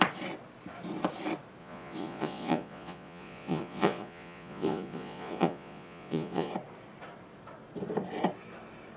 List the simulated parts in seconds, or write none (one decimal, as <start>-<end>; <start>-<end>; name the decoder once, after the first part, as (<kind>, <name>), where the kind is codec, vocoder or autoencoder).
1.6-6.5 (vocoder, Vocos)